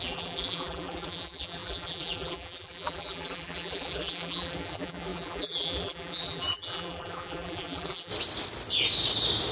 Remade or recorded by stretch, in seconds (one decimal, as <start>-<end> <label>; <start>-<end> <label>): 0.0-8.1 remade; 8.1-9.5 recorded